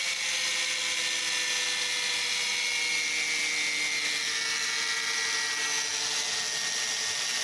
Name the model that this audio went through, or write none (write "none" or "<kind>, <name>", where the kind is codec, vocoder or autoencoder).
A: none